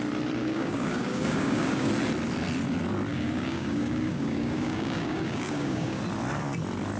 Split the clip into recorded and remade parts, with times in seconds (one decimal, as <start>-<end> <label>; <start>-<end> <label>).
0.0-0.4 recorded; 0.4-1.9 remade; 1.9-3.1 recorded; 3.1-6.0 remade; 6.0-7.0 recorded